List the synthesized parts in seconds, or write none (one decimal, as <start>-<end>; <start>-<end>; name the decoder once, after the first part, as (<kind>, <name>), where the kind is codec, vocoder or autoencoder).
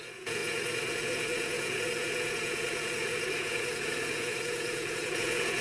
0.0-5.6 (vocoder, Vocos)